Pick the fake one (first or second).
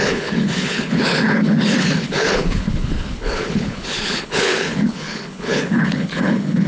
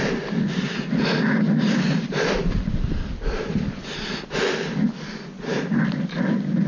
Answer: first